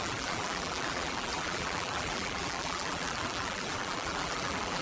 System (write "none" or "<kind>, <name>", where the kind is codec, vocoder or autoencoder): vocoder, BigVGAN v2